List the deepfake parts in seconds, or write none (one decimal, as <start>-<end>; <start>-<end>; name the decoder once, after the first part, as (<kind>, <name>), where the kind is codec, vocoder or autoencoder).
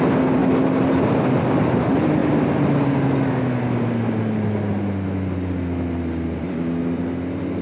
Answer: none